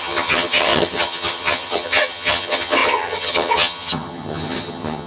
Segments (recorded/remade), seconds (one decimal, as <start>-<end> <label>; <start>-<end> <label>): 0.0-5.1 remade